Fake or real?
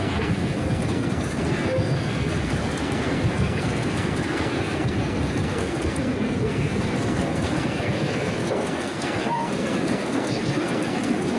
fake